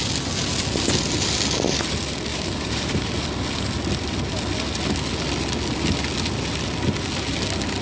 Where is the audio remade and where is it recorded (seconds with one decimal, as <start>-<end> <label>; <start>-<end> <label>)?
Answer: 0.0-2.3 recorded; 2.3-3.1 remade; 3.1-7.8 recorded